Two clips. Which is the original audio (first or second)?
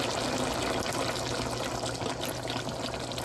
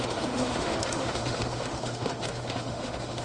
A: first